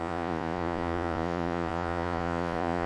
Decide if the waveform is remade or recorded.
remade